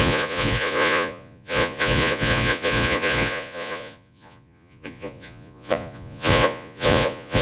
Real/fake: fake